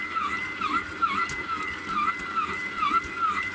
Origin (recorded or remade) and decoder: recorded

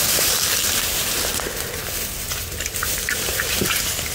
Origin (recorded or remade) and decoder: recorded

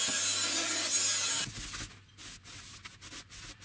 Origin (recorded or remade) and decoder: recorded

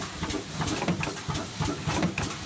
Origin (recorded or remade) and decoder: recorded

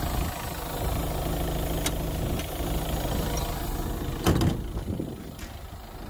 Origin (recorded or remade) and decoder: recorded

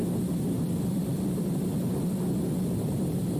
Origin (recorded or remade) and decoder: recorded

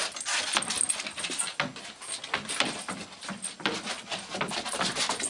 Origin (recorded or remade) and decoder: recorded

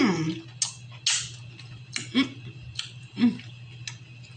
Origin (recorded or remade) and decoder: recorded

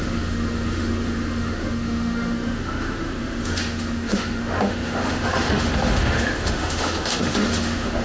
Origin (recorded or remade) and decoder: remade, autoencoder, DAC-VAE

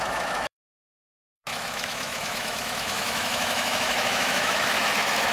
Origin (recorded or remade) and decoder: remade, autoencoder, DAC-VAE